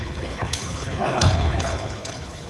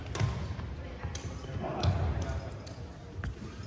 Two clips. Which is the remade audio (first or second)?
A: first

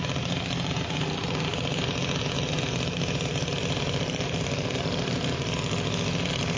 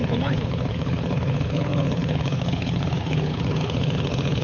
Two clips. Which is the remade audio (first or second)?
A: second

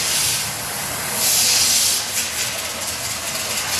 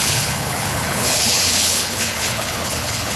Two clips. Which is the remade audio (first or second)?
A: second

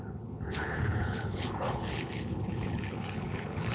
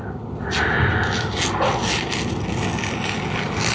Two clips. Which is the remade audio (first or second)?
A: first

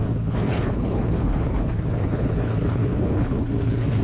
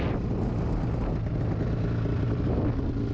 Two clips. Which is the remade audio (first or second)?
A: first